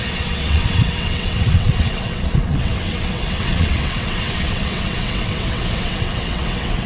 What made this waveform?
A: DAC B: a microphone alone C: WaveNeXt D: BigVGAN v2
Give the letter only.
C